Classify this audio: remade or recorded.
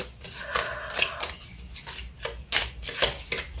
recorded